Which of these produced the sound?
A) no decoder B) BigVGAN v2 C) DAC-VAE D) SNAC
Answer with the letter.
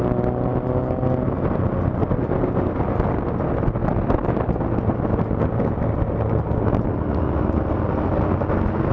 A